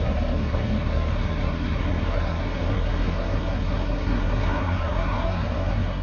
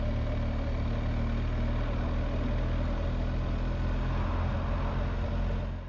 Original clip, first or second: second